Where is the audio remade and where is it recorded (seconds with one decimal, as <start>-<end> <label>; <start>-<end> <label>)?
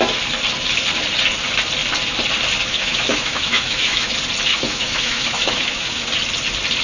0.0-2.7 recorded; 2.7-4.1 remade; 4.1-4.5 recorded; 4.5-6.1 remade; 6.1-6.8 recorded